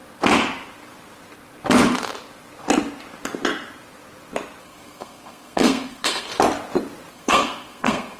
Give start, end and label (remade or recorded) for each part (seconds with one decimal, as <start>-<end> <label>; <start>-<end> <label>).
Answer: 0.0-4.6 recorded; 4.6-6.3 remade; 6.3-7.1 recorded; 7.1-8.2 remade